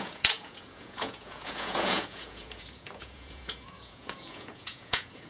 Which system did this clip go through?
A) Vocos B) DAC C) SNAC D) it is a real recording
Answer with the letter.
A